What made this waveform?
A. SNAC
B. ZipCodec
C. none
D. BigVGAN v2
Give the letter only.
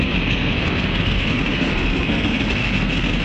A